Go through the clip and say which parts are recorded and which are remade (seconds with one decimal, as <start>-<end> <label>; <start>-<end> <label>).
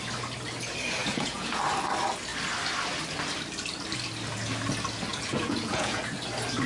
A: 0.0-1.0 recorded; 1.0-1.6 remade; 1.6-5.1 recorded; 5.1-6.0 remade; 6.0-6.7 recorded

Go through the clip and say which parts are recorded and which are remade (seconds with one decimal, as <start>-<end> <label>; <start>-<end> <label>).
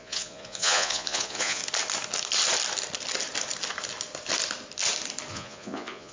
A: 0.0-1.6 remade; 1.6-5.3 recorded; 5.3-6.1 remade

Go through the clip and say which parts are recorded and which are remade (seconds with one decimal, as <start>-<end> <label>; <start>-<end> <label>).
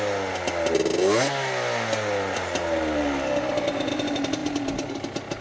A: 0.0-5.4 recorded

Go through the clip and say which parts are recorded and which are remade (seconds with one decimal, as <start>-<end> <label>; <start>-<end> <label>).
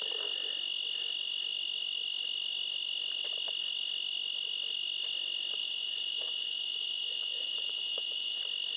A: 0.0-5.6 recorded; 5.6-8.4 remade; 8.4-8.8 recorded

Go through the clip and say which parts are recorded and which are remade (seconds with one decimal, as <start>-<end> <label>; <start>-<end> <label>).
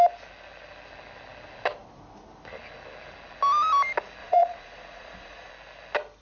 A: 0.0-4.2 recorded; 4.2-5.5 remade; 5.5-6.2 recorded